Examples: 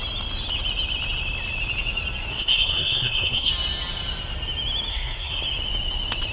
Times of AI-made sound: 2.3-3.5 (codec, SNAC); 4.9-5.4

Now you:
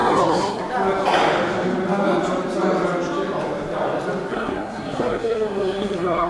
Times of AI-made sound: 0.0-0.6 (codec, SNAC); 4.3-6.3

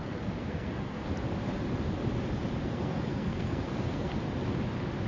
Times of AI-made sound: 0.0-1.0 (codec, SNAC); 2.6-4.1

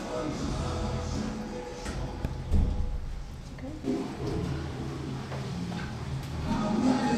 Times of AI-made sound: none

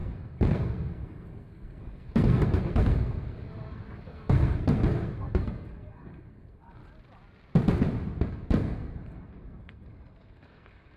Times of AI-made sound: 0.0-6.8 (codec, SNAC); 8.3-11.0